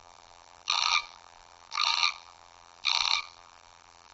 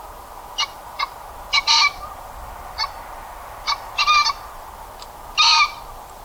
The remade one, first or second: first